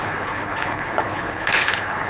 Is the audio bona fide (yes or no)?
no